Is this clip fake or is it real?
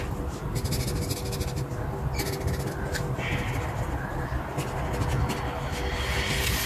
real